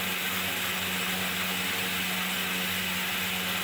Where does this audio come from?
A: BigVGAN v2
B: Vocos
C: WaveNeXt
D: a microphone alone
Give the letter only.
D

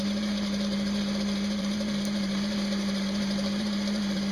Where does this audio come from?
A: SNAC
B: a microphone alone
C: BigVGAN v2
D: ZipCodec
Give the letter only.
C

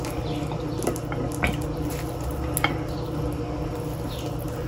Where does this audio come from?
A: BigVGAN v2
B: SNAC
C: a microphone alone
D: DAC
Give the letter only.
C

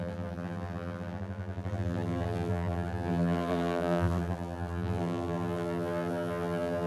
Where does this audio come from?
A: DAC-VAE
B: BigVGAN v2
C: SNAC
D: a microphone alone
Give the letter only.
B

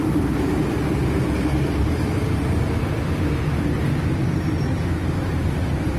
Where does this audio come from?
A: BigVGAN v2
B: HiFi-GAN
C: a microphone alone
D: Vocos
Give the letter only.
A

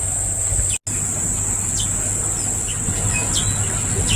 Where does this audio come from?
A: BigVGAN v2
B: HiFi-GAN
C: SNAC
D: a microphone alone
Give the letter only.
D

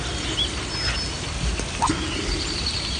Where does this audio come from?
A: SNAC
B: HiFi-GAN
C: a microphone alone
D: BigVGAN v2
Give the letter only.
C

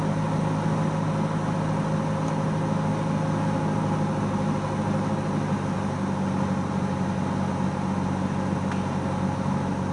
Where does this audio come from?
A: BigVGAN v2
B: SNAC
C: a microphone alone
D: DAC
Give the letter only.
C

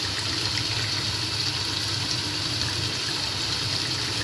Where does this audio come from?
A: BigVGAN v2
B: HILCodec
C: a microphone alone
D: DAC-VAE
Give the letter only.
A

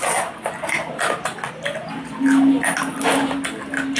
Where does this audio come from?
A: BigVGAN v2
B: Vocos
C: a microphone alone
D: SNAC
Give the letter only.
C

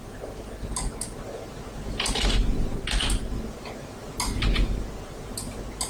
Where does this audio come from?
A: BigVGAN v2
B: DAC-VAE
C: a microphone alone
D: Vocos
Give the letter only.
C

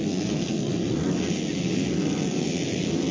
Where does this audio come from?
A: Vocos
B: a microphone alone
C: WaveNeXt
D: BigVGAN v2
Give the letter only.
B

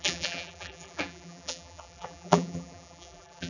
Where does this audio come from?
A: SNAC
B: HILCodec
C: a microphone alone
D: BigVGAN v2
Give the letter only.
D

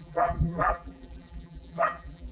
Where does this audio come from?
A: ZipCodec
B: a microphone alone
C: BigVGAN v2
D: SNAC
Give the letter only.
C